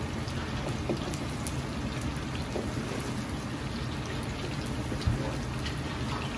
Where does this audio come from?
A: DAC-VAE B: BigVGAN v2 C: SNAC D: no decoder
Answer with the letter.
D